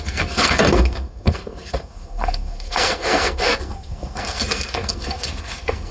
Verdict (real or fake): fake